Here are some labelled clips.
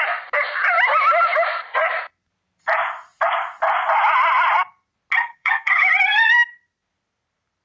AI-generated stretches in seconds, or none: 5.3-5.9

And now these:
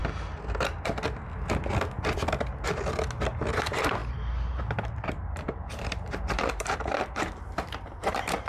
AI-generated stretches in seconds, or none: 3.6-8.5

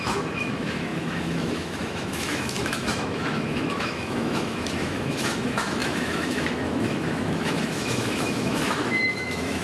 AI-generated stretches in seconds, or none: 0.0-9.6

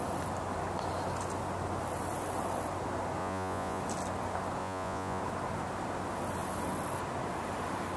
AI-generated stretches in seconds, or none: 3.2-3.8; 4.6-5.2

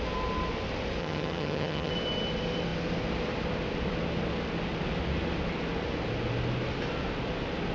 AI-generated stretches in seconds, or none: 1.0-1.9

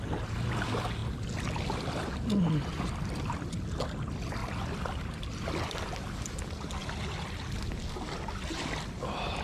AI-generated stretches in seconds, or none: none

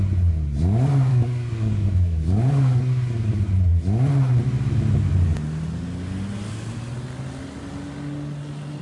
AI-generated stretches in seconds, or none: 1.1-2.8

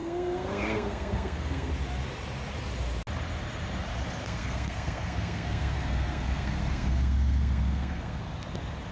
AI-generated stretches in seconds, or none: 0.0-1.7; 4.2-8.2